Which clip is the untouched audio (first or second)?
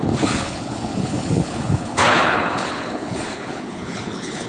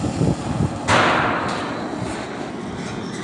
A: second